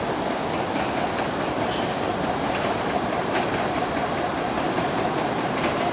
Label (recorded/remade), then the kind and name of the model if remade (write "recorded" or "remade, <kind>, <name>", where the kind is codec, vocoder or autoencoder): recorded